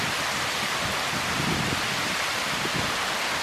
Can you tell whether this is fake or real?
real